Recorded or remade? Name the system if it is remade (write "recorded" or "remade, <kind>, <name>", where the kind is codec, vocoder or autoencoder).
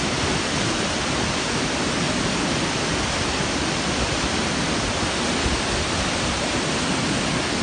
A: recorded